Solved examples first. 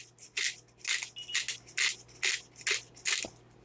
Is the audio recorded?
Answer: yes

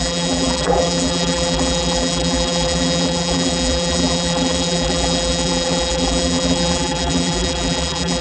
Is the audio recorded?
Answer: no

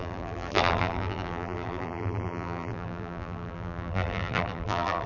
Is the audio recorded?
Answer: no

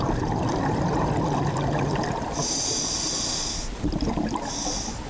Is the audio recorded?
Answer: yes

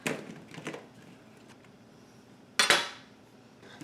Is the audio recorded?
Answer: yes